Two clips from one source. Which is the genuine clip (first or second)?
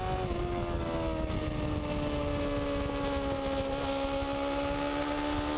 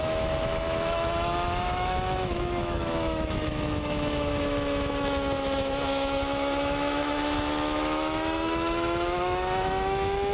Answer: first